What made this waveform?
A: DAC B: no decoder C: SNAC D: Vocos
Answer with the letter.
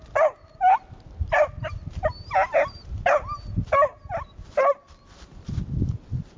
B